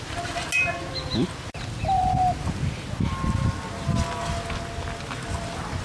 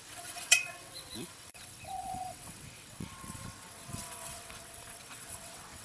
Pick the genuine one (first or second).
first